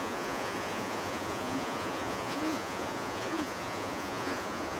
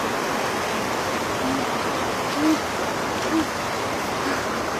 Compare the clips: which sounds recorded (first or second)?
second